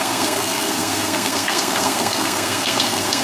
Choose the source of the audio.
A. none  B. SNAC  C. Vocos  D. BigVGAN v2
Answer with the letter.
B